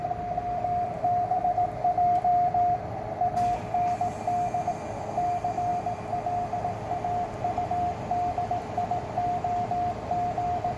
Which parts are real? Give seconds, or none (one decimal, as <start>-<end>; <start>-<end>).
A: 2.3-4.7; 5.7-6.6